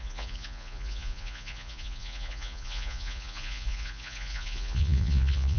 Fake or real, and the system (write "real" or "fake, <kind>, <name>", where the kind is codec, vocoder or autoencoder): fake, vocoder, Vocos